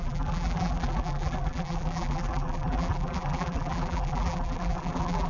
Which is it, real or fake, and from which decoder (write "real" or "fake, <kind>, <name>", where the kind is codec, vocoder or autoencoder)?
fake, vocoder, BigVGAN v2